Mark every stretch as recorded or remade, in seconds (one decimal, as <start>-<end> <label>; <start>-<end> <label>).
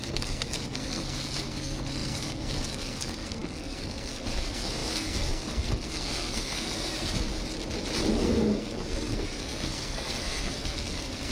0.0-7.3 remade; 7.3-8.1 recorded; 8.1-11.3 remade